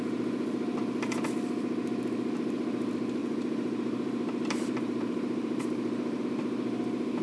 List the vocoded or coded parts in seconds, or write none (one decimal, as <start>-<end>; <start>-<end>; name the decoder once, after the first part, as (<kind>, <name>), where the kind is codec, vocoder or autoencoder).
3.2-6.2 (vocoder, BigVGAN v2)